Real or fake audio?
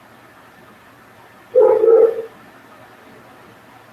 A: real